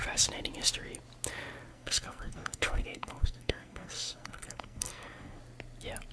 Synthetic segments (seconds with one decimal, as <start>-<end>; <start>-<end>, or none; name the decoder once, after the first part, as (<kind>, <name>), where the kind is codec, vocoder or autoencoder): 1.7-5.4 (codec, SNAC)